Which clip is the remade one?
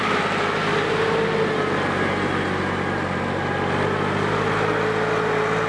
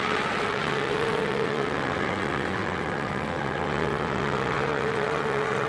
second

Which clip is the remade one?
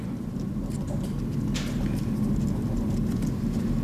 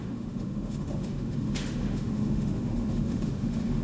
second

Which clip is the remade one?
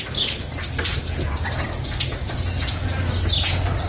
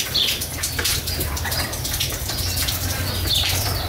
second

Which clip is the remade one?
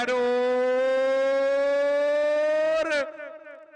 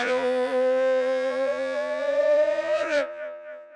second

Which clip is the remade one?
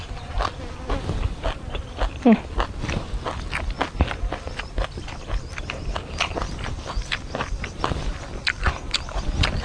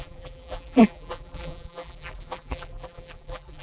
second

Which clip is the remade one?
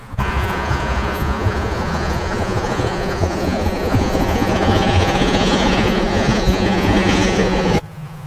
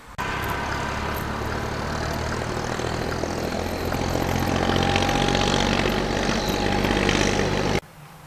first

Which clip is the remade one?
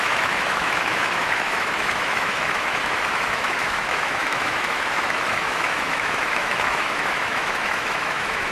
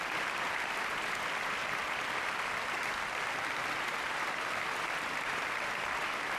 first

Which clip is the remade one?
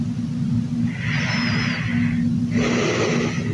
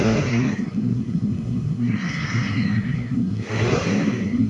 second